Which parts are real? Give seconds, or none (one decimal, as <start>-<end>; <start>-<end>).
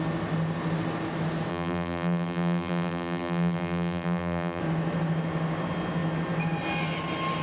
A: 0.0-1.5; 4.6-7.4